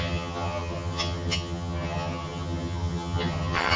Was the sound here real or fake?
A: fake